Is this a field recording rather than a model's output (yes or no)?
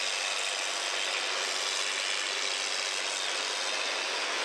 yes